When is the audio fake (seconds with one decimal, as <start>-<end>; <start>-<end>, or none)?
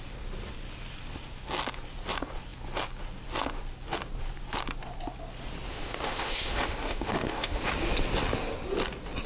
5.7-7.7